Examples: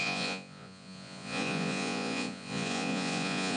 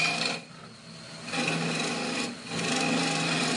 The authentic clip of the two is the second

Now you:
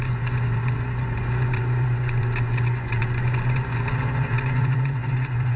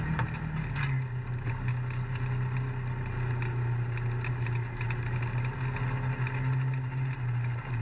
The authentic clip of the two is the second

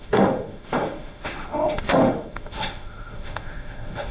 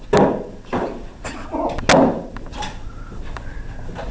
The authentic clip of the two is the second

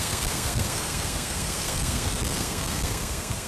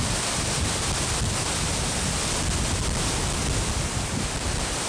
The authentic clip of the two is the second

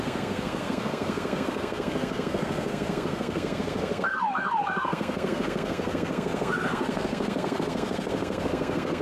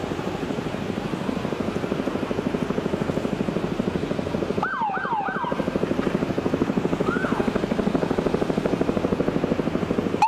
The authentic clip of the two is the second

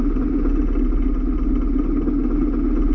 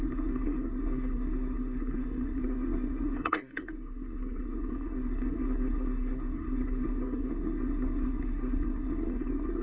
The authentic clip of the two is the first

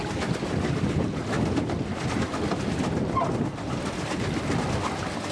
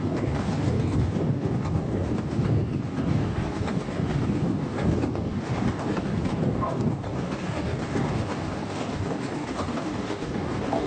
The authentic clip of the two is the first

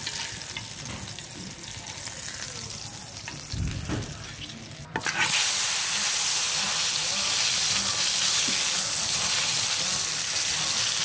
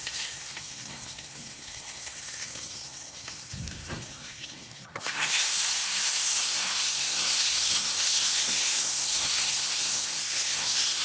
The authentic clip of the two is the first